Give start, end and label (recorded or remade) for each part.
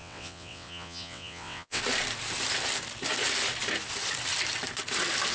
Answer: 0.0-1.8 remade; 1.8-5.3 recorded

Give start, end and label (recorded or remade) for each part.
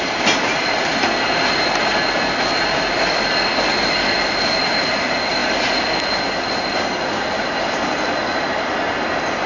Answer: 0.0-9.5 recorded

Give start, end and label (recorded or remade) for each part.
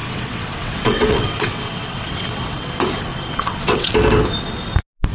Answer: 0.0-2.7 remade; 2.7-3.1 recorded; 3.1-3.9 remade; 3.9-5.1 recorded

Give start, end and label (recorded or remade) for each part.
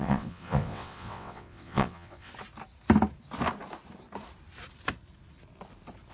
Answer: 0.0-2.3 remade; 2.3-6.1 recorded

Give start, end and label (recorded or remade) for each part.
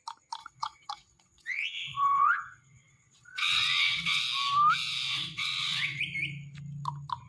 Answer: 0.0-0.4 recorded; 0.4-4.2 remade; 4.2-5.1 recorded; 5.1-6.0 remade; 6.0-7.3 recorded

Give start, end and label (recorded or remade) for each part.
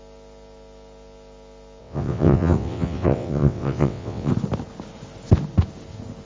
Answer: 0.0-1.8 recorded; 1.8-4.3 remade; 4.3-6.3 recorded